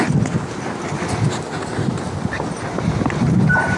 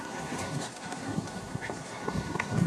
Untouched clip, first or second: first